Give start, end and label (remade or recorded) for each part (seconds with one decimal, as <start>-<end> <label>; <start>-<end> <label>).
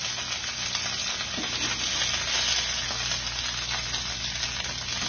0.0-5.1 recorded